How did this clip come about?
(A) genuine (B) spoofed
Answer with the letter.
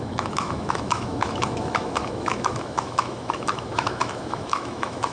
B